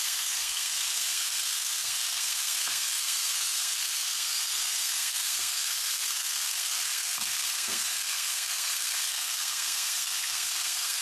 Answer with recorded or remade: remade